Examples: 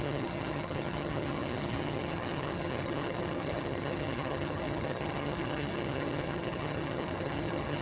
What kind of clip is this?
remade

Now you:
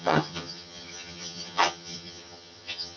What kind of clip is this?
remade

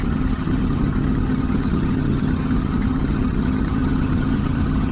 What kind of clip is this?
remade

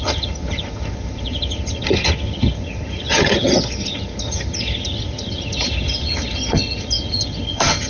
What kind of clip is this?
remade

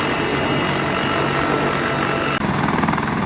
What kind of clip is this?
recorded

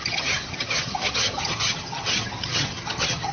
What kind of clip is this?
remade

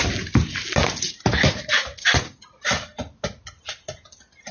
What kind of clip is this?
recorded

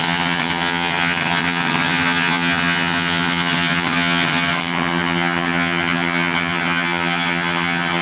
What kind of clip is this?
remade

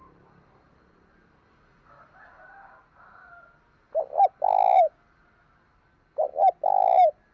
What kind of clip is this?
recorded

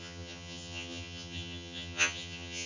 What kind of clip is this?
remade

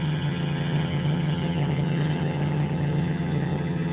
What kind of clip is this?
remade